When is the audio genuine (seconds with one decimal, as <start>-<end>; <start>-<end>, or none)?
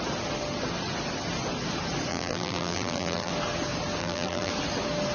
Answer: 0.0-2.1; 3.3-4.0; 4.5-5.1